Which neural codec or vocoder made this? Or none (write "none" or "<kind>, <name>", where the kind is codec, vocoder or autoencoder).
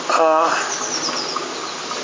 none